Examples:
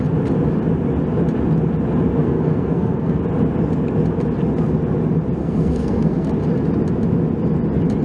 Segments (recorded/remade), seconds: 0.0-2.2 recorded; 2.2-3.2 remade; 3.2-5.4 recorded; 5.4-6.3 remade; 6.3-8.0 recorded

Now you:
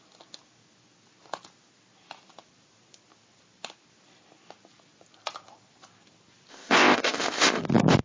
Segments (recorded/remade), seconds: 0.0-6.5 recorded; 6.5-7.6 remade; 7.6-8.0 recorded

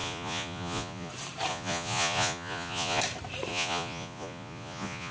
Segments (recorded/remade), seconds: 0.0-1.1 remade; 1.1-1.5 recorded; 1.5-3.0 remade; 3.0-3.5 recorded; 3.5-5.1 remade

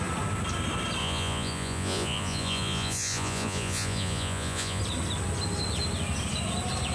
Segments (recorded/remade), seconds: 0.0-1.0 recorded; 1.0-4.8 remade; 4.8-6.9 recorded

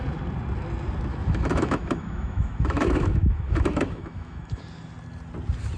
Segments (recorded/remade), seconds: 0.0-1.1 recorded; 1.1-4.6 remade; 4.6-5.8 recorded

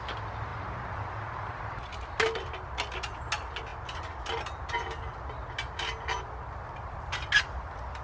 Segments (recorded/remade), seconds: 0.0-0.5 recorded; 0.5-1.6 remade; 1.6-8.0 recorded